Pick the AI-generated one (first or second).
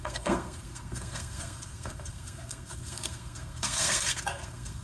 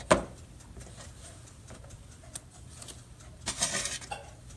first